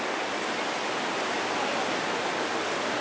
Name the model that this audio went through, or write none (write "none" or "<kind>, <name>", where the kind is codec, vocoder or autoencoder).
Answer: none